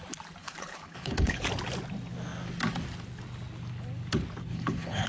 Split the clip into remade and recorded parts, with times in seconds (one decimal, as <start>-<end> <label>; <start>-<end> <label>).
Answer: 0.0-0.4 recorded; 0.4-1.4 remade; 1.4-4.5 recorded; 4.5-5.1 remade